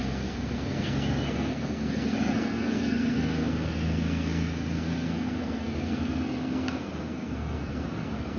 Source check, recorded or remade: remade